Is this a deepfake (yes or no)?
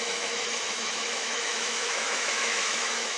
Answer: yes